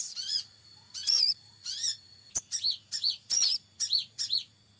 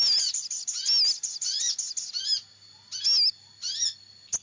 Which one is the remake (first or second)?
first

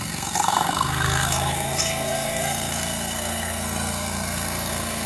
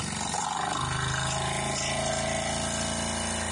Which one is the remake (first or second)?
first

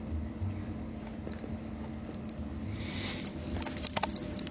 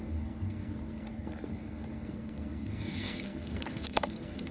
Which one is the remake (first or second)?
second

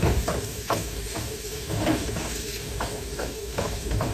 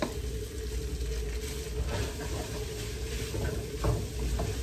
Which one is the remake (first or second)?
first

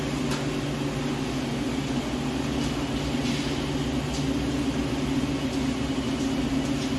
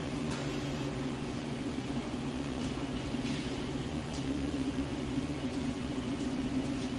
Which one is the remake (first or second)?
second